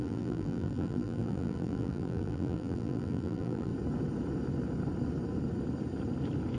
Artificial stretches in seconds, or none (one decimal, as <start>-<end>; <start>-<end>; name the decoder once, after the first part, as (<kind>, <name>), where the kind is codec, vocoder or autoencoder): 0.0-3.7 (vocoder, BigVGAN v2)